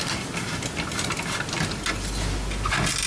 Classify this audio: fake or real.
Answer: real